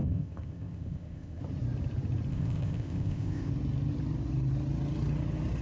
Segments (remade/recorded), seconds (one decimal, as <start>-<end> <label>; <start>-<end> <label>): 0.0-1.4 remade; 1.4-2.3 recorded; 2.3-3.5 remade; 3.5-5.6 recorded